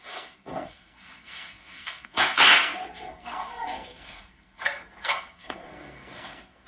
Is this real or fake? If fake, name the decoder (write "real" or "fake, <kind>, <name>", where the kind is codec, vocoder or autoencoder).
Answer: fake, codec, SNAC